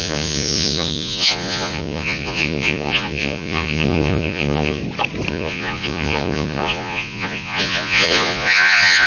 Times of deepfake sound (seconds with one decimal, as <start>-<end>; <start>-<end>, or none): 0.0-4.8; 5.3-9.1